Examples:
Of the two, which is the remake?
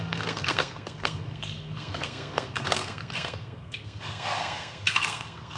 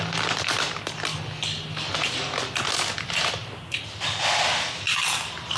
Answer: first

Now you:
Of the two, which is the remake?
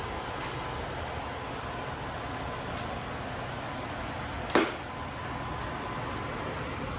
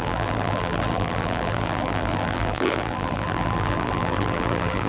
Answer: second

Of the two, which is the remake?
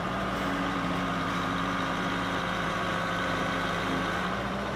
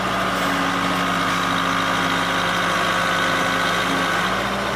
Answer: first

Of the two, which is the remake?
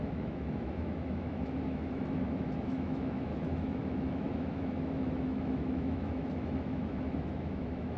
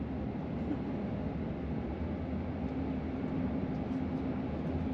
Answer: first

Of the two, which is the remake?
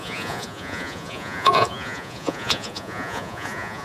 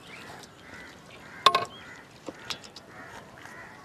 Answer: first